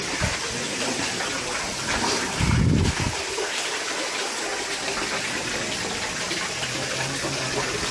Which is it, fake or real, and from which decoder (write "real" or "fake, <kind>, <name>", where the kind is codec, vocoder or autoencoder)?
real